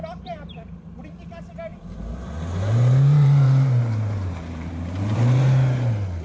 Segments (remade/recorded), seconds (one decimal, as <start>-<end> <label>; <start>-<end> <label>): 0.0-1.0 remade; 1.0-1.7 recorded; 1.7-5.4 remade; 5.4-6.2 recorded